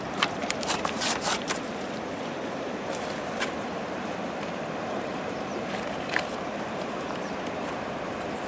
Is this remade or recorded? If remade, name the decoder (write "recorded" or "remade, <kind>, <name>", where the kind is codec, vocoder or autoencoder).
remade, vocoder, BigVGAN v2